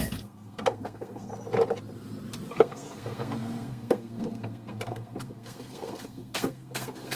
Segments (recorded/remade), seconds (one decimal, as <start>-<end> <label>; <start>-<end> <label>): 0.0-1.3 remade; 1.3-2.5 recorded; 2.5-7.2 remade